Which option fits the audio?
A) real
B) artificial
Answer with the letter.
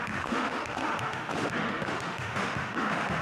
B